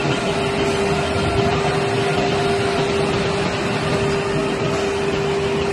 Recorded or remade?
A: recorded